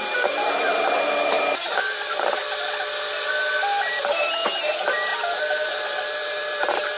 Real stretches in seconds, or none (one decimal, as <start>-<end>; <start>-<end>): 2.4-3.9